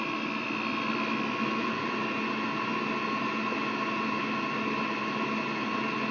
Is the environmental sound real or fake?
real